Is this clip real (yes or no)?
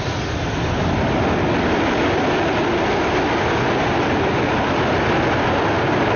yes